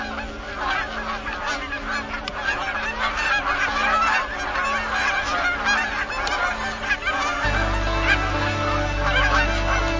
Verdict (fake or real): real